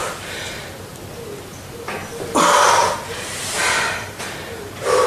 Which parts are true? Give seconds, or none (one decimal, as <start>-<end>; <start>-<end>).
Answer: 0.7-2.0; 2.7-3.6; 4.5-5.1